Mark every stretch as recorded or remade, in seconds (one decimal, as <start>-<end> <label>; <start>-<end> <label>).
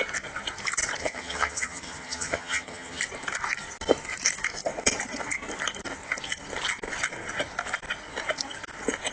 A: 0.0-1.0 recorded; 1.0-3.0 remade; 3.0-9.1 recorded